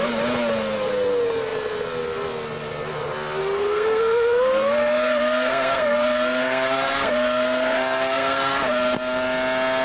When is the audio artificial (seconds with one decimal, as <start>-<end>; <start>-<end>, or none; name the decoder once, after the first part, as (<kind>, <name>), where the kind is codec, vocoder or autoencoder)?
3.4-8.6 (codec, SNAC)